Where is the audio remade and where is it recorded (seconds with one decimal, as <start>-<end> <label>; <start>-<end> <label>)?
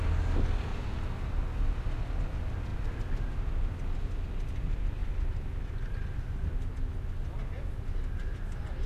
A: 0.0-0.7 recorded; 0.7-2.2 remade; 2.2-5.0 recorded; 5.0-5.7 remade; 5.7-8.9 recorded